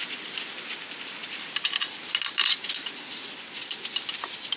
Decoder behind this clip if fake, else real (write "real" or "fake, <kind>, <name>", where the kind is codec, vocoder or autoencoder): real